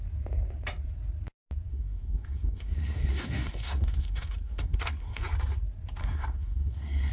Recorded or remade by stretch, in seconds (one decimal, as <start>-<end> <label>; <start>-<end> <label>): 0.0-1.7 recorded; 1.7-5.2 remade; 5.2-6.0 recorded; 6.0-7.1 remade